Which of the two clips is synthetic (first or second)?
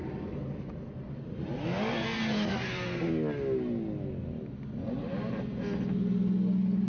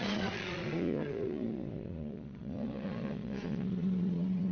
second